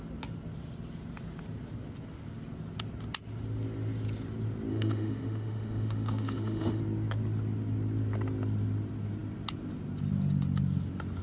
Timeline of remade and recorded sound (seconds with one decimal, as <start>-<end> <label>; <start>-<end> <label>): 0.0-4.7 recorded; 4.7-6.8 remade; 6.8-11.2 recorded